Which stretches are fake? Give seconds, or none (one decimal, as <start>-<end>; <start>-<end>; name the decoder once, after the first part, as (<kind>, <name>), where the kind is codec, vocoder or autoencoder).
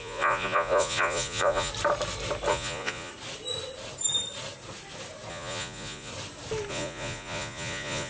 0.0-1.7 (vocoder, Vocos); 2.5-3.1; 5.3-6.1; 6.7-8.1